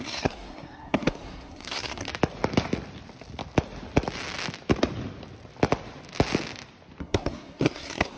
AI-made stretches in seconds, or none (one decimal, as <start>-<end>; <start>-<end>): 0.0-2.1; 7.0-8.2